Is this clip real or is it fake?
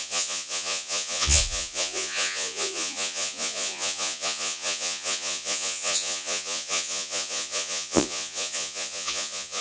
fake